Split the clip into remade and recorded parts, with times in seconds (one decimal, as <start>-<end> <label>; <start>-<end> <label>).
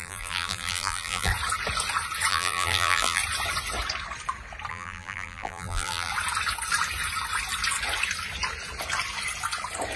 0.0-1.3 remade; 1.3-2.3 recorded; 2.3-3.2 remade; 3.2-4.7 recorded; 4.7-6.1 remade; 6.1-10.0 recorded